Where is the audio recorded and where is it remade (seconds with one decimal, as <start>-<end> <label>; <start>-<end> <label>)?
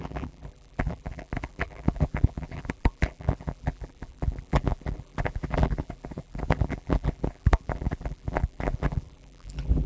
0.0-9.9 remade